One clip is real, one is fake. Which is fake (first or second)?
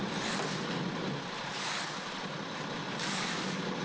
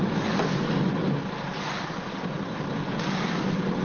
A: first